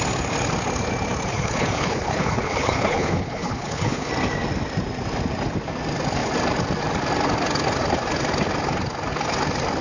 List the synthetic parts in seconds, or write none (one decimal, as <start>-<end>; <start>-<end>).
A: 1.3-4.1